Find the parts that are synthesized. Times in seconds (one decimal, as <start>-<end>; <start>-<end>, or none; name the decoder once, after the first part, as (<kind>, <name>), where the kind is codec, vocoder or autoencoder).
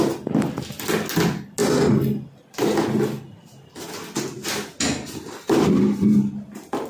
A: none